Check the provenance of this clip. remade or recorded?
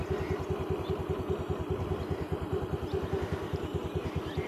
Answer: recorded